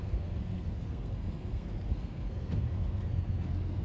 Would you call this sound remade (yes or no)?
yes